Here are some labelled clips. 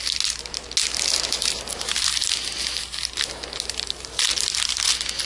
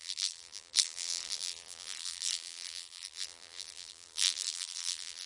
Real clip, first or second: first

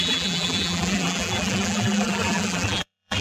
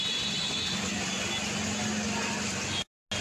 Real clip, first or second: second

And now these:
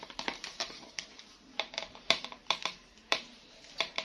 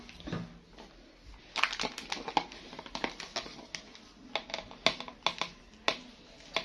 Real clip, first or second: second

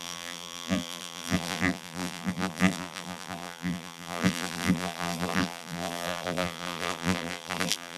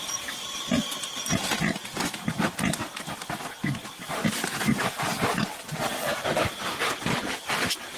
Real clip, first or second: second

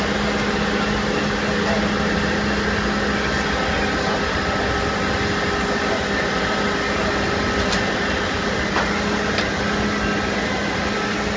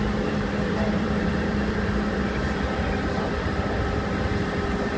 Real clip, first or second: first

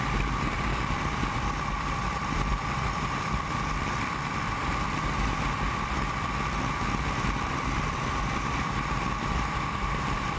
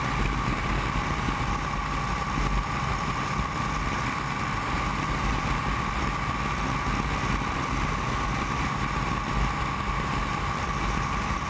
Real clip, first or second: second